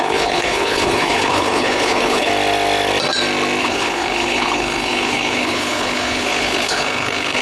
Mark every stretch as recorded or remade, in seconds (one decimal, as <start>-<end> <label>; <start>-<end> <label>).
0.0-2.3 remade; 2.3-3.6 recorded; 3.6-7.4 remade